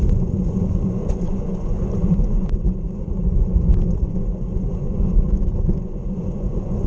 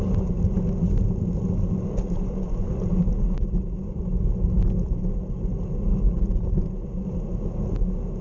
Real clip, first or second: second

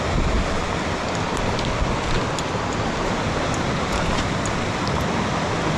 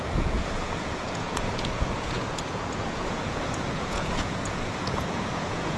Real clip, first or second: first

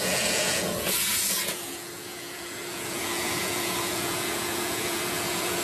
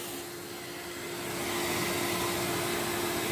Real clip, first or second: second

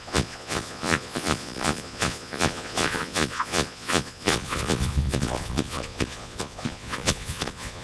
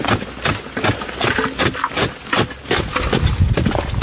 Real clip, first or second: second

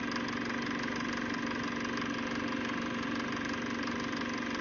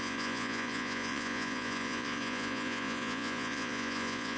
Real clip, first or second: first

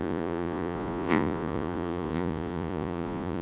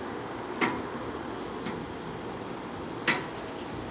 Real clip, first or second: second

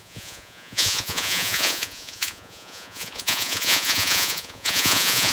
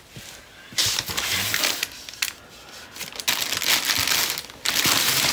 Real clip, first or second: second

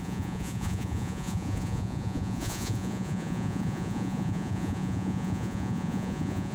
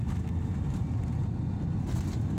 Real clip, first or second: second